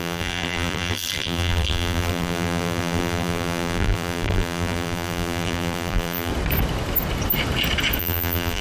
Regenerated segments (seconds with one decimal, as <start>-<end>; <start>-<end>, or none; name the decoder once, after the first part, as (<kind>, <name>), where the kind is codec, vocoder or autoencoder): 0.0-6.3 (vocoder, BigVGAN v2); 8.0-8.6